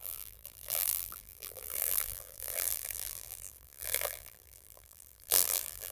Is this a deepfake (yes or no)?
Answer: yes